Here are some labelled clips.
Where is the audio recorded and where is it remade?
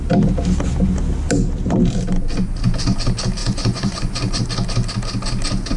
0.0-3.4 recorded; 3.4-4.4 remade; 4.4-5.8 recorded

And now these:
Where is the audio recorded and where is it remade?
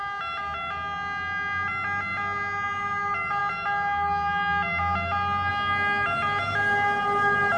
0.0-7.6 recorded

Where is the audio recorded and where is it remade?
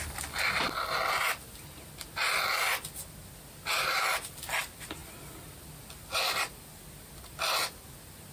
0.0-8.3 recorded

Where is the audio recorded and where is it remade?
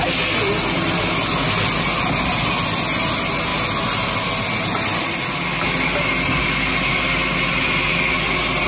0.0-8.7 recorded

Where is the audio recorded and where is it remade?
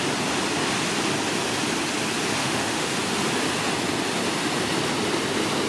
0.0-2.4 recorded; 2.4-2.9 remade; 2.9-5.7 recorded